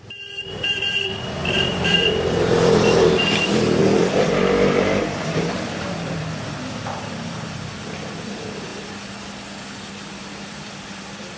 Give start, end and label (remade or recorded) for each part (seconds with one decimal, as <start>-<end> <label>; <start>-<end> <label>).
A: 0.0-8.7 remade; 8.7-10.2 recorded; 10.2-11.4 remade